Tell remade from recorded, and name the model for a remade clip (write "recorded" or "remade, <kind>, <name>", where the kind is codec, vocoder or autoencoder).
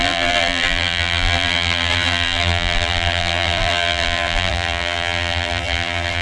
remade, vocoder, BigVGAN v2